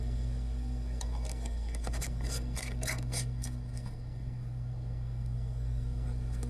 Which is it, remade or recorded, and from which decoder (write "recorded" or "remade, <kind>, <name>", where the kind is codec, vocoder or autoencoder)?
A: remade, codec, SNAC